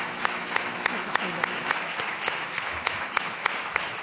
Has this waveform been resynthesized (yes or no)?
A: yes